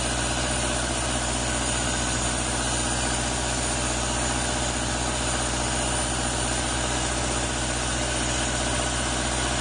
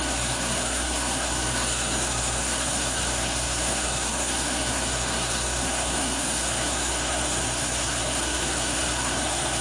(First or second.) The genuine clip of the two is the first